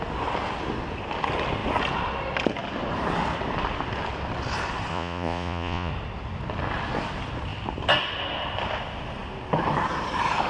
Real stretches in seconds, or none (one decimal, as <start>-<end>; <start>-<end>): 0.0-4.9; 5.9-10.5